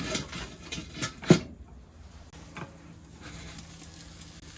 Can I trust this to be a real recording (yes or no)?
yes